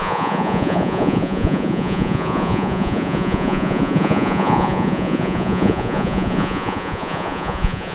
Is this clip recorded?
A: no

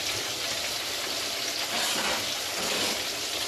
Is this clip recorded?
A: yes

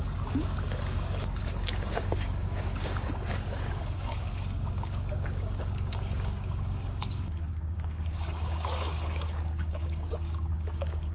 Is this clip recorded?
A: no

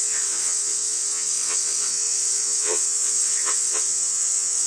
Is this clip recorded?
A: no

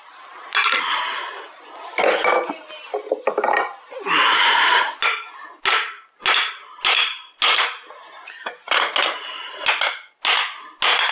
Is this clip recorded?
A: yes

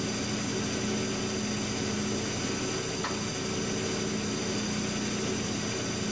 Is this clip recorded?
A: yes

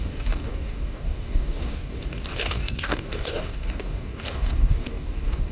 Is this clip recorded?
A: no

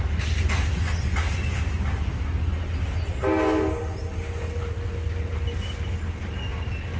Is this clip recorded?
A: yes